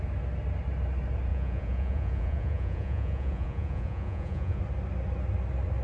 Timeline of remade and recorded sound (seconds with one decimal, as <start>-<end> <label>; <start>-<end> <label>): 0.0-1.3 recorded; 1.3-4.6 remade; 4.6-5.8 recorded